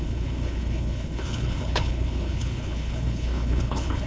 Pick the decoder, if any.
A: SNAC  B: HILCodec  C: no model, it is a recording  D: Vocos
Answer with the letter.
B